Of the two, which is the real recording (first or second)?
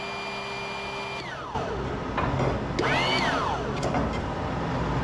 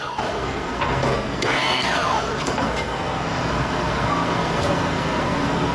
first